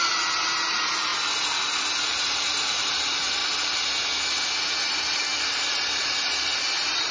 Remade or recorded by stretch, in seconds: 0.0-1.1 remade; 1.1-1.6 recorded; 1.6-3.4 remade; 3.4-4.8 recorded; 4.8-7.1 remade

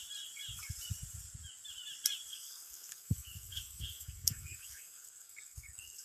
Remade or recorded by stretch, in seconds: 0.0-2.3 recorded; 2.3-6.0 remade

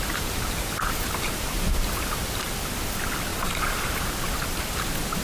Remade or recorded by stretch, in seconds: 0.0-2.2 remade; 2.2-5.2 recorded

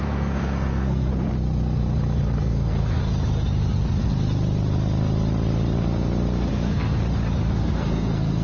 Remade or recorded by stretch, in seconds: 0.0-1.1 remade; 1.1-2.4 recorded; 2.4-3.0 remade; 3.0-6.5 recorded; 6.5-7.0 remade; 7.0-7.5 recorded; 7.5-8.4 remade

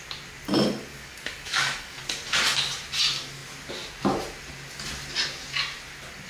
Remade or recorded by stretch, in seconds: 0.0-0.9 recorded; 0.9-2.0 remade; 2.0-6.3 recorded

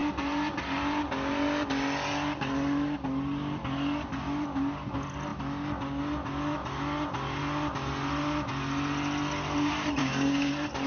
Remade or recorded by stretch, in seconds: 0.0-10.0 recorded; 10.0-10.5 remade; 10.5-10.9 recorded